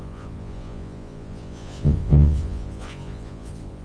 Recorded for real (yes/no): no